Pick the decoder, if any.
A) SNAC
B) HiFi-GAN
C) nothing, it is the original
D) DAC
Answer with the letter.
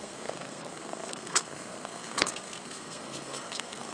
A